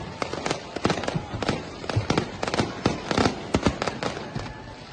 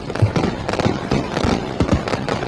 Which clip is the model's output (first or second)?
second